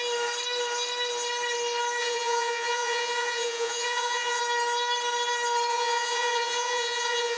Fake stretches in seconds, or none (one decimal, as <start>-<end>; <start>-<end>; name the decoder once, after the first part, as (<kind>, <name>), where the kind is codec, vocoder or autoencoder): 2.0-4.4 (vocoder, Vocos); 5.7-7.4